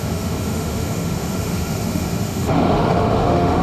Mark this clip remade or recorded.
remade